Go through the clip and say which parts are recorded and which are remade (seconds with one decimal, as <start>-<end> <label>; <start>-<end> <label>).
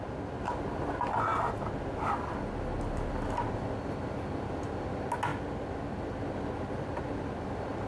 0.0-7.9 recorded